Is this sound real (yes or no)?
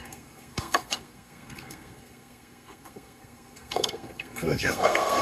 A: no